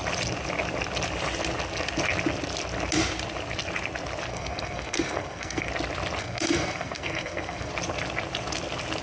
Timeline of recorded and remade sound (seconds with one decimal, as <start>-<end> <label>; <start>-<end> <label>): 0.0-4.3 recorded; 4.3-5.7 remade; 5.7-6.2 recorded; 6.2-7.7 remade; 7.7-9.0 recorded

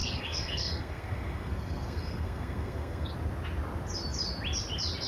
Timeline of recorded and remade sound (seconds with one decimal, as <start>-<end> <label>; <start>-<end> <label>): 0.0-3.1 remade; 3.1-5.1 recorded

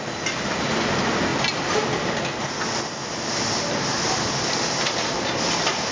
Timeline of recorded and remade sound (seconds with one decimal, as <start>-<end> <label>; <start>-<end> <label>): 0.0-5.9 recorded